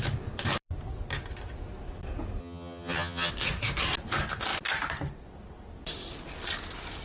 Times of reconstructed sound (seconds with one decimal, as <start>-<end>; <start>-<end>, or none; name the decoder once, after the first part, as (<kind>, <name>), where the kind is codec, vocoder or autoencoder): 2.4-3.3 (vocoder, HiFi-GAN)